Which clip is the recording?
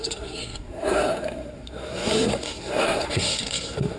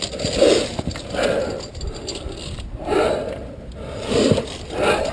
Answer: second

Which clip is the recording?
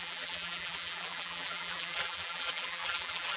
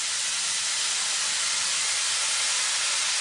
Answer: second